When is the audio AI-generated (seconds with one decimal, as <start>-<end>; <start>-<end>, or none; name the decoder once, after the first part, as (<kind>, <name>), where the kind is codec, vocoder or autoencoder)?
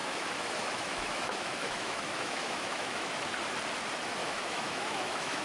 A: 0.0-3.2 (autoencoder, DAC-VAE); 4.2-5.4